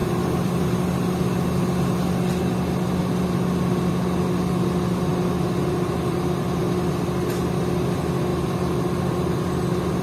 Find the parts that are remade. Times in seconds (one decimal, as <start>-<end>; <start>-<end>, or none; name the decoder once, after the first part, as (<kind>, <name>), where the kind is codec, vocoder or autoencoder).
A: 0.0-0.7 (vocoder, BigVGAN v2); 8.3-9.0